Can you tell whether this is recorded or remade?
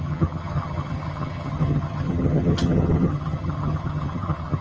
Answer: remade